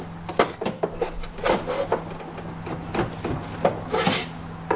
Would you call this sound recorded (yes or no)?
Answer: yes